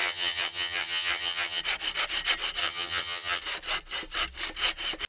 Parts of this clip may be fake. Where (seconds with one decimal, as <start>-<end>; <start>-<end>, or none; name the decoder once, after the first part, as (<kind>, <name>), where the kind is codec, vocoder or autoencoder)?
0.0-1.6 (vocoder, HiFi-GAN); 2.6-3.4